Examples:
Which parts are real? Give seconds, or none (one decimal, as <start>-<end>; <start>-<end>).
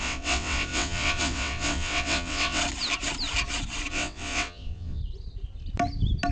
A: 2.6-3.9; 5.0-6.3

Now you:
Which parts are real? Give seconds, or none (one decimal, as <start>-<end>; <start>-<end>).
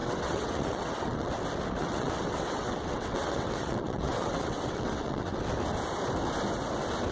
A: 1.3-1.8; 5.4-7.1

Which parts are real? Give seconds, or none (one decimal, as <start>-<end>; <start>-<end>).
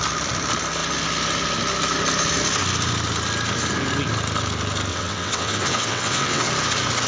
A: 0.0-4.9; 6.5-7.1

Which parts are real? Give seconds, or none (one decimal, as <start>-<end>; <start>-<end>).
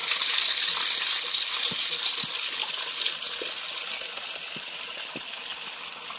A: 0.0-6.2